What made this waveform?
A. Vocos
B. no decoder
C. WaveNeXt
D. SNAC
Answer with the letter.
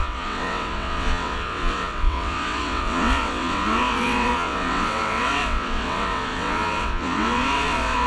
C